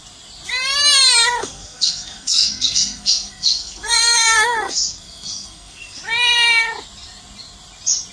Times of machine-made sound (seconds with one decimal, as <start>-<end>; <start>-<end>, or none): 1.4-6.0